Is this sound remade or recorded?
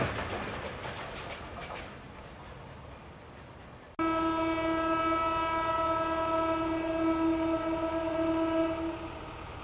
recorded